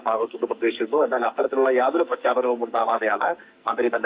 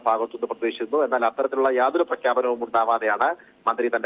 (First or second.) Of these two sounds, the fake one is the first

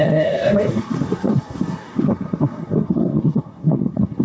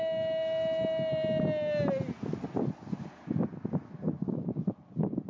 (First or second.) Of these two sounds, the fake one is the first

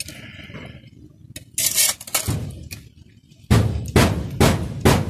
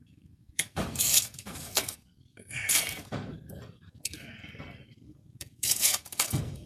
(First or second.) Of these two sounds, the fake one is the second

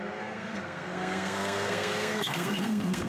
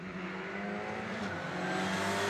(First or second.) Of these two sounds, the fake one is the first